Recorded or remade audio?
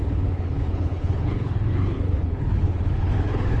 remade